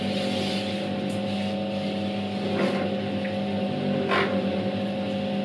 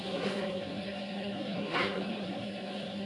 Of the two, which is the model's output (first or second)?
second